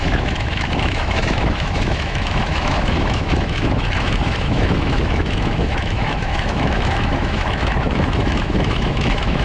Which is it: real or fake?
fake